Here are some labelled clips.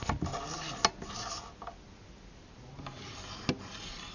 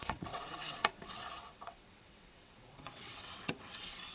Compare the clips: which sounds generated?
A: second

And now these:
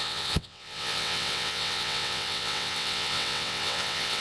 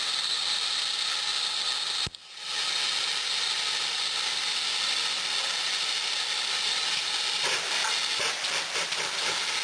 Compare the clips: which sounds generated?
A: first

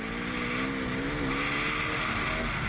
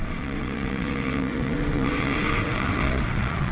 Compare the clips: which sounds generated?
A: second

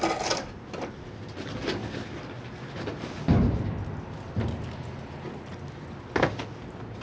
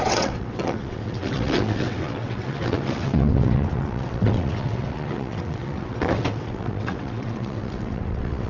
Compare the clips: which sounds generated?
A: second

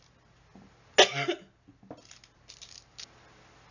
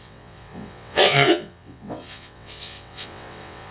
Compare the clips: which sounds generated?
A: second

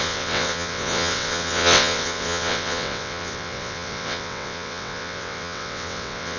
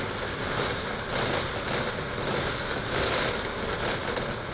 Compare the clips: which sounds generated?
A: first